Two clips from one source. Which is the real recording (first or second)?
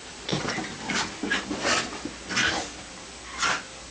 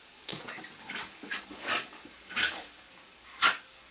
first